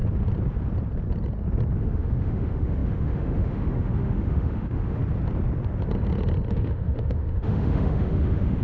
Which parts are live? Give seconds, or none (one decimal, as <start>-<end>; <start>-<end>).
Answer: 0.0-1.8; 5.0-6.5